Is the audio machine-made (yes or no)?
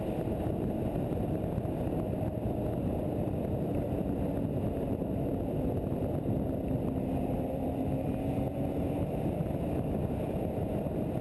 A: yes